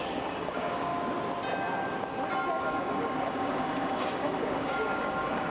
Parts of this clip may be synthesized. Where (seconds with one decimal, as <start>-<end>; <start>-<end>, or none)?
0.0-0.9; 2.6-5.5